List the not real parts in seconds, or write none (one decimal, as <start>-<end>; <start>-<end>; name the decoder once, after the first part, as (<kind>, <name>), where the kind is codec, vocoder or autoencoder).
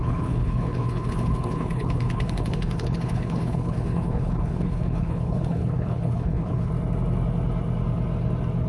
0.0-6.7 (codec, HILCodec)